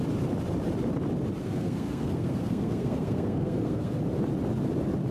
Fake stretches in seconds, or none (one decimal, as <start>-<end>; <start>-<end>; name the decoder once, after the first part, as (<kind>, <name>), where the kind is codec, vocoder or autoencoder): 1.4-4.0 (codec, SNAC)